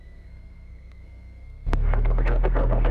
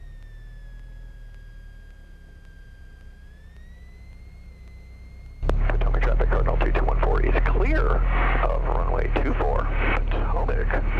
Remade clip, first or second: first